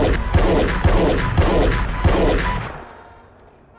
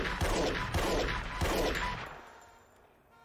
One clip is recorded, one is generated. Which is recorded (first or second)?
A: first